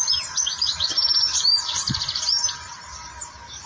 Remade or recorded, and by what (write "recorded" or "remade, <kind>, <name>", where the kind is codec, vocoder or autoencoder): remade, vocoder, BigVGAN v2